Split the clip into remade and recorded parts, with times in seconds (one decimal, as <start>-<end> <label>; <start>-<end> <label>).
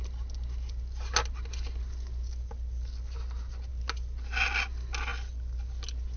0.0-6.2 recorded